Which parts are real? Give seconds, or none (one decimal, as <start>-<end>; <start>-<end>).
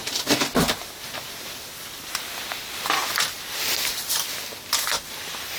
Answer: 0.0-5.6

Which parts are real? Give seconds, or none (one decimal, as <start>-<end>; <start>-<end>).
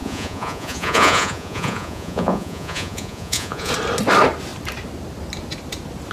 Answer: 3.7-6.1